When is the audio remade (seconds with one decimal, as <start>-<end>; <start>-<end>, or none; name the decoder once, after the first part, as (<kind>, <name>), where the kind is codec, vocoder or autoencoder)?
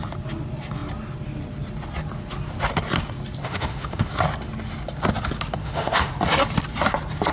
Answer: 3.4-4.1 (autoencoder, DAC-VAE); 5.6-6.1